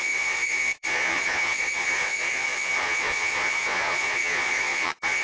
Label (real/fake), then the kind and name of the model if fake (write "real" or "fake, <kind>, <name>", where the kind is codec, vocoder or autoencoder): fake, vocoder, Vocos